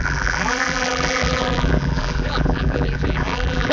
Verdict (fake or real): fake